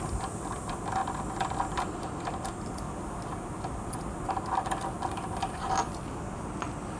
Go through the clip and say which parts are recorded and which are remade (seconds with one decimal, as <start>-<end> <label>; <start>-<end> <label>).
0.0-7.0 recorded